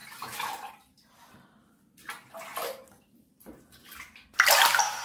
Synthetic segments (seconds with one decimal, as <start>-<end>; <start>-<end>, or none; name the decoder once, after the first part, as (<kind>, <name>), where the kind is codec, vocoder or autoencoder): 0.0-1.3 (vocoder, BigVGAN v2)